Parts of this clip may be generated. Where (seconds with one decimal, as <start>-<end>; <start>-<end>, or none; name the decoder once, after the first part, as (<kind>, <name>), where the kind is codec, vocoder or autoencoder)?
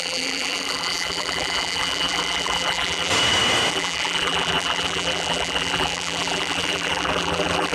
0.0-3.1 (vocoder, BigVGAN v2); 3.7-7.7